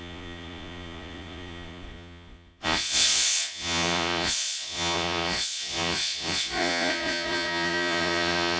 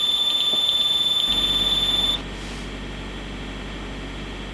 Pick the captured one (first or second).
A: second